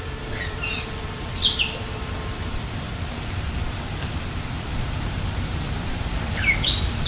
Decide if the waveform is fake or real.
fake